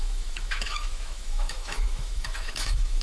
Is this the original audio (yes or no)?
no